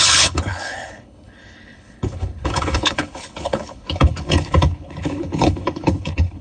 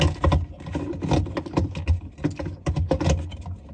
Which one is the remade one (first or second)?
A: first